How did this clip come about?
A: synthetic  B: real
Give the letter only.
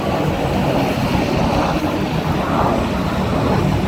B